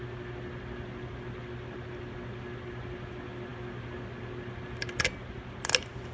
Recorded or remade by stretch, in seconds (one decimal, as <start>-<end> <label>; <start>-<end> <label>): 0.0-6.1 recorded